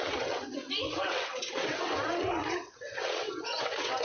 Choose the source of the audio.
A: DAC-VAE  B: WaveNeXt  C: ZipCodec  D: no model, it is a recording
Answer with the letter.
B